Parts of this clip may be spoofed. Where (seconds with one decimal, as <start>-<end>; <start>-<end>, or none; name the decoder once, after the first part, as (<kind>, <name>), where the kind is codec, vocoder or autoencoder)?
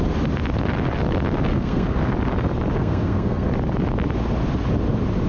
1.5-2.0 (codec, SNAC); 2.8-3.5